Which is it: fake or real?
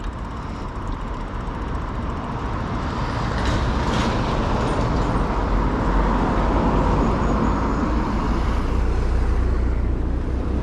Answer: real